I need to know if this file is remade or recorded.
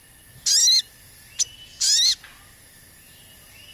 recorded